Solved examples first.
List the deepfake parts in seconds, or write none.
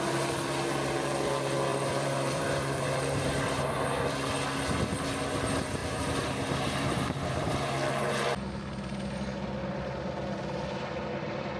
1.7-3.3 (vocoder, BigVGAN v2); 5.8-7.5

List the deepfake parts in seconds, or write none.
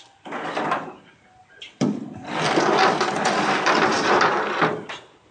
none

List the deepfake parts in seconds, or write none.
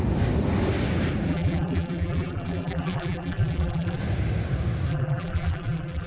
1.3-4.0 (vocoder, BigVGAN v2); 4.9-6.1